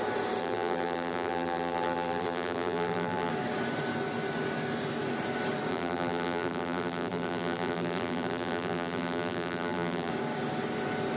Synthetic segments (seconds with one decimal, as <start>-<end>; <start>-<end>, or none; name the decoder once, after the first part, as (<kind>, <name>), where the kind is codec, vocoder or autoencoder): 0.4-3.3 (vocoder, BigVGAN v2); 5.7-10.1